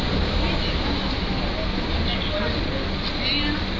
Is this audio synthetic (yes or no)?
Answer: no